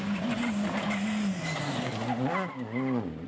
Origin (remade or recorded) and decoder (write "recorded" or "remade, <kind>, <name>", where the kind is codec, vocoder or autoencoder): recorded